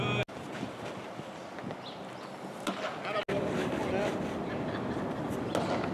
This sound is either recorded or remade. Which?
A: recorded